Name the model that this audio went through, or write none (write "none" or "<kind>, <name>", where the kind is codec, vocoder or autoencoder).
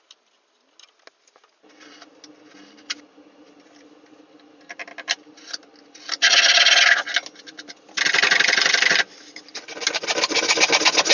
none